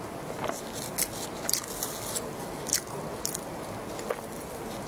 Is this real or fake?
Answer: real